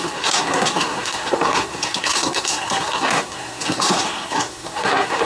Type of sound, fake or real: fake